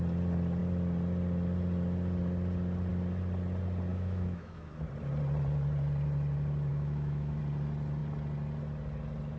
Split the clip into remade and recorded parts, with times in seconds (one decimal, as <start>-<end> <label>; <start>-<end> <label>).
0.0-3.9 recorded; 3.9-4.7 remade; 4.7-6.7 recorded; 6.7-7.4 remade; 7.4-9.4 recorded